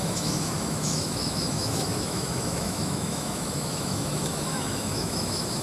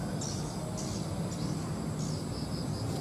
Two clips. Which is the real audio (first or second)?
second